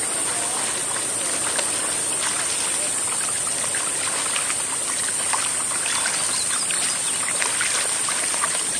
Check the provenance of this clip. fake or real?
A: real